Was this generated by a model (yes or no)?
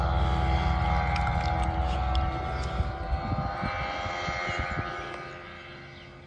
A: no